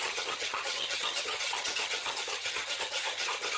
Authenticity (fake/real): fake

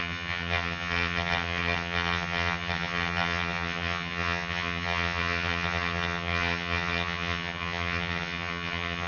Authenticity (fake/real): fake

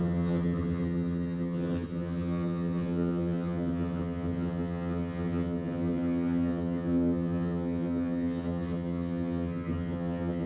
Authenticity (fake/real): fake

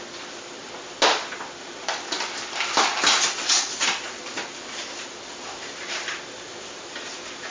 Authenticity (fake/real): real